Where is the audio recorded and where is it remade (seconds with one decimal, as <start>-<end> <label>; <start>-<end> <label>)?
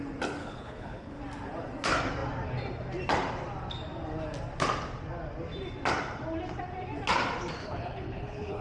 0.0-0.4 recorded; 0.4-1.2 remade; 1.2-7.6 recorded; 7.6-8.6 remade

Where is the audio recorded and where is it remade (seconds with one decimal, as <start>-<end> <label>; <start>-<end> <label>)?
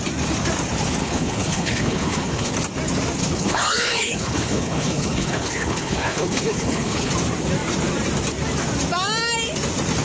0.0-1.0 recorded; 1.0-2.5 remade; 2.5-3.2 recorded; 3.2-7.1 remade; 7.1-10.0 recorded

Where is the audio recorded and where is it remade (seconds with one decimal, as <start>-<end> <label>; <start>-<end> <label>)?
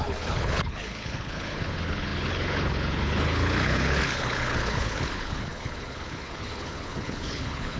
0.0-7.8 remade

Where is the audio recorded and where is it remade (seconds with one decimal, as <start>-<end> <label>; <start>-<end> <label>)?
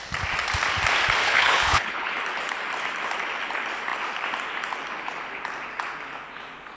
0.0-1.2 recorded; 1.2-2.1 remade; 2.1-6.8 recorded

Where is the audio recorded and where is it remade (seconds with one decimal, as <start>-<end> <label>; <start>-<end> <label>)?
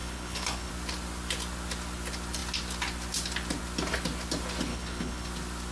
0.0-0.7 remade; 0.7-4.7 recorded; 4.7-5.3 remade; 5.3-5.7 recorded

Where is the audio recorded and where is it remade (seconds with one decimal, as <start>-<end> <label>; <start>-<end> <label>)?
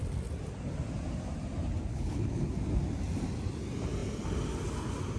0.0-1.9 recorded; 1.9-2.5 remade; 2.5-5.2 recorded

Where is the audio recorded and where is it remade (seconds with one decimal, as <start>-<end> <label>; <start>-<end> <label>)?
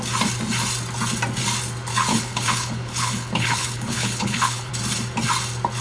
0.0-2.1 recorded; 2.1-4.7 remade; 4.7-5.8 recorded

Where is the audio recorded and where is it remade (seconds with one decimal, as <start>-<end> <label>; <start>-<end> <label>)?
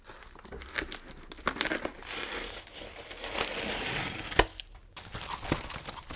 0.0-6.2 recorded